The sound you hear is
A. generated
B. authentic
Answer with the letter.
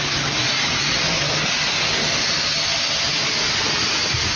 B